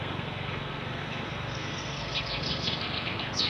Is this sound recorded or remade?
remade